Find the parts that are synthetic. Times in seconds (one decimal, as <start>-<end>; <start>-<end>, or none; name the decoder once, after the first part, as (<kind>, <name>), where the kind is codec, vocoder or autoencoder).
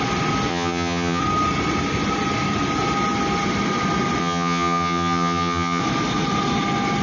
0.5-1.2 (vocoder, HiFi-GAN); 4.2-5.8